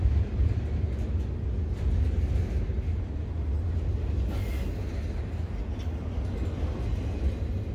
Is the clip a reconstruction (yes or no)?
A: no